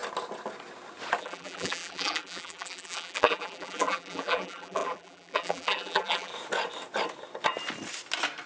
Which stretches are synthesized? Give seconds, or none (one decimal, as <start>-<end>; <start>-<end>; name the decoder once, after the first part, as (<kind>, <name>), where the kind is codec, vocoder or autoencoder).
1.2-6.3 (vocoder, BigVGAN v2)